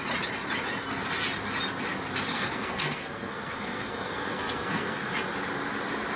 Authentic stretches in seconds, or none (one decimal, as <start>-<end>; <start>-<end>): 0.0-2.3; 5.1-6.2